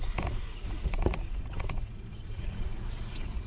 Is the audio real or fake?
fake